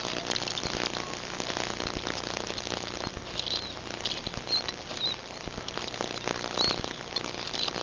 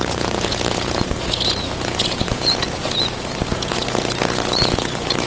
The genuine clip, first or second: first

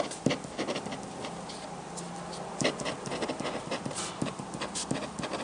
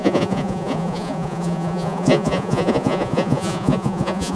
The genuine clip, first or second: first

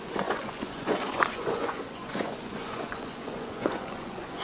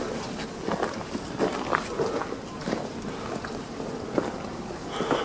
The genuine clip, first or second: second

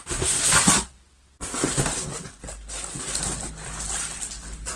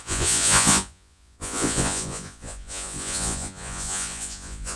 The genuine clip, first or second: first